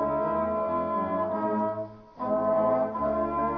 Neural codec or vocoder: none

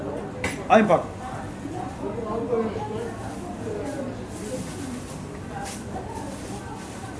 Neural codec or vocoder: none